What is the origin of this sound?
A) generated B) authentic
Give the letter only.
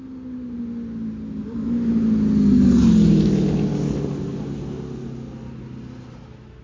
B